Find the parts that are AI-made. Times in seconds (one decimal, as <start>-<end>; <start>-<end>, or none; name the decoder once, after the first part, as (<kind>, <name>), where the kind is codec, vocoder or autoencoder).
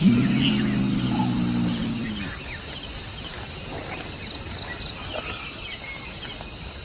none